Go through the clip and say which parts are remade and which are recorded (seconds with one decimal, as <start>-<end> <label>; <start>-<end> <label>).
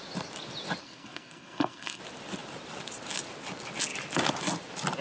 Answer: 0.0-0.8 recorded; 0.8-2.0 remade; 2.0-5.0 recorded